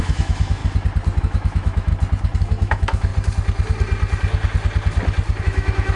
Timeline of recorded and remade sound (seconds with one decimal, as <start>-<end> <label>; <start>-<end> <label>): 0.0-0.6 remade; 0.6-1.2 recorded; 1.2-1.9 remade; 1.9-2.4 recorded; 2.4-3.1 remade; 3.1-5.4 recorded; 5.4-6.0 remade